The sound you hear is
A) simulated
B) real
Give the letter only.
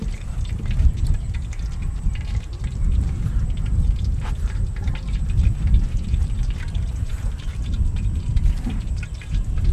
A